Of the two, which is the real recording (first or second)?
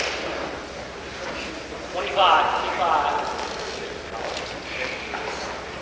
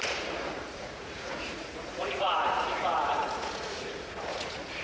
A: first